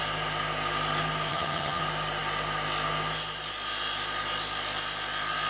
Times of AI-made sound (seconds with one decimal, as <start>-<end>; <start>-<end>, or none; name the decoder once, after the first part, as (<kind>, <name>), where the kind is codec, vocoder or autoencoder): 1.3-1.8 (vocoder, HiFi-GAN)